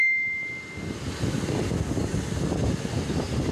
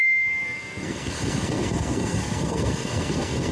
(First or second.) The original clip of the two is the first